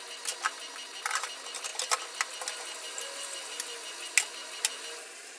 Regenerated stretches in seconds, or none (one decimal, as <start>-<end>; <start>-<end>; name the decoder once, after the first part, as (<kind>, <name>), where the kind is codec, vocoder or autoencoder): none